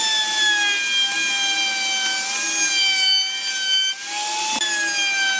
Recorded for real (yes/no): yes